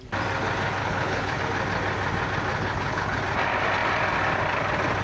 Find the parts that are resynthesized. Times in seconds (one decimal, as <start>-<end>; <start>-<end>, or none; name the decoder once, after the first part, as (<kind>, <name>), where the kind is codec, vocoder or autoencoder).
0.8-1.4 (codec, HILCodec); 2.5-3.2